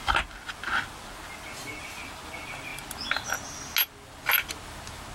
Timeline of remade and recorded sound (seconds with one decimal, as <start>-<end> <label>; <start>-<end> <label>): 0.0-5.1 recorded